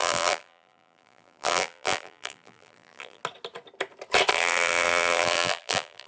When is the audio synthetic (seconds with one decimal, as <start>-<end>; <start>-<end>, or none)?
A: 0.0-3.2; 4.3-6.1

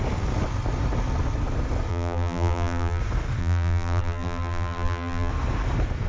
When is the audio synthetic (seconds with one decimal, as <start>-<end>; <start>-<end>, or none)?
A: 1.9-3.0; 3.4-5.3